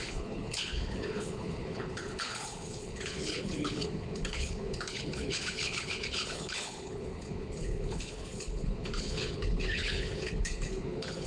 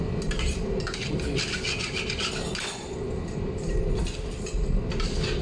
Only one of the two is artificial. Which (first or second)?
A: first